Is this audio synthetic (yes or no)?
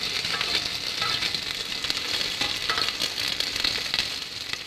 no